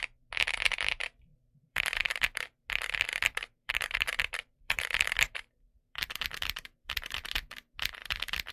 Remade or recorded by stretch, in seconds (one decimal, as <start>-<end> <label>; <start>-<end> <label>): 0.0-1.3 recorded; 1.3-2.7 remade; 2.7-3.1 recorded; 3.1-7.2 remade; 7.2-8.0 recorded; 8.0-8.5 remade